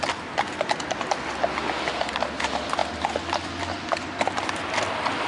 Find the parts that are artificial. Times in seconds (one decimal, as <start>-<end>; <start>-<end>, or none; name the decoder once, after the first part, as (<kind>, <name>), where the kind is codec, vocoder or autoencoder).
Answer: none